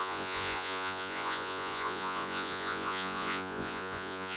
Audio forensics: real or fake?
fake